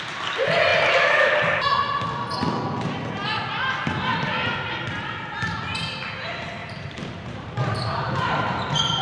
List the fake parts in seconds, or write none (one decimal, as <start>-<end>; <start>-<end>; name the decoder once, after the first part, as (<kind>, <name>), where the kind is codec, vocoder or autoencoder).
6.6-9.0 (vocoder, BigVGAN v2)